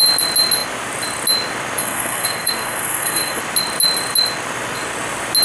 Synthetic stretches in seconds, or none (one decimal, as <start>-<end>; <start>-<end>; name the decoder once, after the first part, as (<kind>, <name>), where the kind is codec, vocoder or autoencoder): 1.8-3.4 (codec, SNAC)

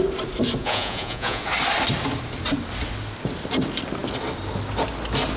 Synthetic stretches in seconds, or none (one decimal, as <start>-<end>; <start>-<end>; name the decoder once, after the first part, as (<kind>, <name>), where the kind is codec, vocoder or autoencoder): 0.6-1.4 (vocoder, Vocos)

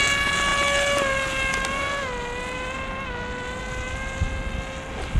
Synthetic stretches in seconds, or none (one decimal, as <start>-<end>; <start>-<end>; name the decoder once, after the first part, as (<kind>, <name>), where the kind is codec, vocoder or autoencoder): none

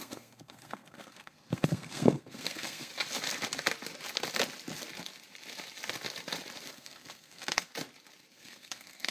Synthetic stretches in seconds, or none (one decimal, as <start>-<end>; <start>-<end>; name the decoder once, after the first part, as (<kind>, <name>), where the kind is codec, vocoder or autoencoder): 0.0-2.9 (codec, SNAC); 6.7-7.7; 8.3-9.1

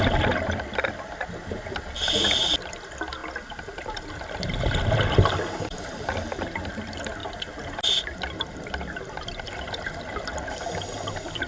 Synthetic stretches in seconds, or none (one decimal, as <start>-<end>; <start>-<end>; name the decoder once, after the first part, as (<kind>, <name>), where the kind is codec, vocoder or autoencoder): none

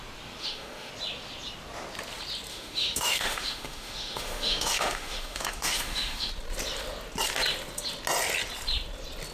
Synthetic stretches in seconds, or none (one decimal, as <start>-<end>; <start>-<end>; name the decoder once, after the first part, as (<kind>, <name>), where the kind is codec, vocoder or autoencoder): 0.4-0.9 (autoencoder, DAC-VAE); 2.5-6.3

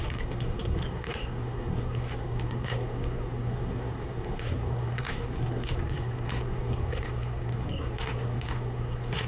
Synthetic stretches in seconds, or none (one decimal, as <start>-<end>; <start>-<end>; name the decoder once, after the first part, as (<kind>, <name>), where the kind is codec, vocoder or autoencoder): 0.0-9.3 (codec, SNAC)